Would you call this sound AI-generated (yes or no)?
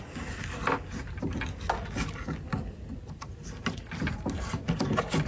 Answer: no